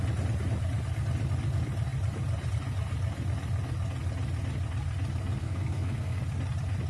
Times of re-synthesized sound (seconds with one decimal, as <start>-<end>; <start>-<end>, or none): 5.4-6.2

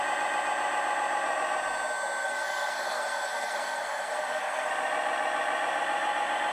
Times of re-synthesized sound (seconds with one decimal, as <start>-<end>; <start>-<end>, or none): 2.2-4.7

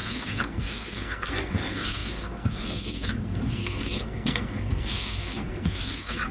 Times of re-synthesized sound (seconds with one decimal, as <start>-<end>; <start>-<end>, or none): 0.0-6.3

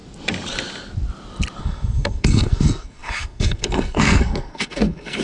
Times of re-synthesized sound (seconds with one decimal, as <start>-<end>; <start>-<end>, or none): 1.6-5.2

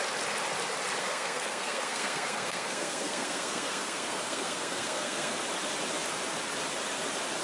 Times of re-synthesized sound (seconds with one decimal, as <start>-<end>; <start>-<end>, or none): 1.0-5.4

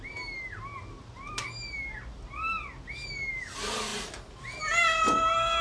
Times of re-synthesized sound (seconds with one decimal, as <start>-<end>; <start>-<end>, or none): none

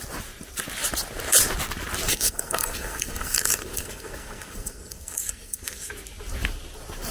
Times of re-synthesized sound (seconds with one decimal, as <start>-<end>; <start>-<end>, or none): 2.1-5.9